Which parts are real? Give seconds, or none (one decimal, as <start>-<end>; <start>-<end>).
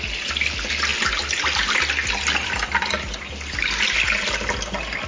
0.0-5.1